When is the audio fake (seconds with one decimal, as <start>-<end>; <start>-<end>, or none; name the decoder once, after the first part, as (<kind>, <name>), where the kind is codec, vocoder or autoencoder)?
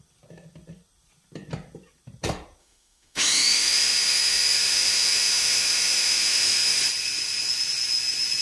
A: 2.6-6.8 (autoencoder, DAC-VAE)